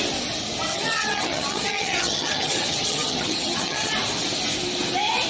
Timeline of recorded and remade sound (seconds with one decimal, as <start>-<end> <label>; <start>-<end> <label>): 0.0-0.7 recorded; 0.7-3.9 remade; 3.9-5.3 recorded